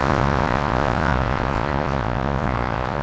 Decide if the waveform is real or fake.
fake